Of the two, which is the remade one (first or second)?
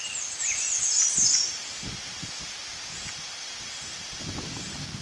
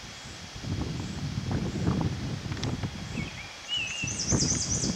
first